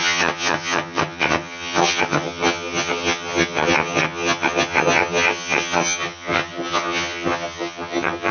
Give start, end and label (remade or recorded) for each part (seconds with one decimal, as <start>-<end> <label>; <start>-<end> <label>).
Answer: 0.0-8.3 remade